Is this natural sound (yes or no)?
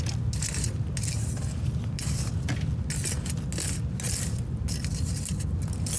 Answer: yes